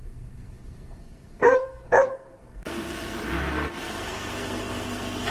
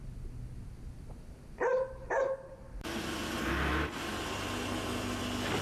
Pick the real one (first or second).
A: second